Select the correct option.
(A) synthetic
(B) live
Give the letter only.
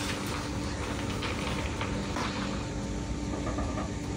B